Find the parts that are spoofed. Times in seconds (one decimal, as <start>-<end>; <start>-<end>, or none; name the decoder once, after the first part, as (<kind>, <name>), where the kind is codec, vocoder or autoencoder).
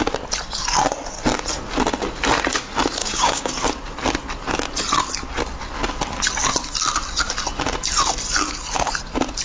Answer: 3.0-3.5 (codec, DAC)